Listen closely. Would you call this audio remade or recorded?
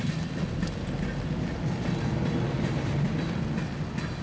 recorded